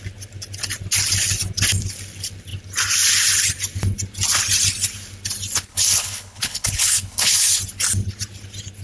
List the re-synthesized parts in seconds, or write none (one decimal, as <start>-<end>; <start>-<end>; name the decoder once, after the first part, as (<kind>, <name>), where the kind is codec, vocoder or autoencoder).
5.7-7.6 (codec, HILCodec)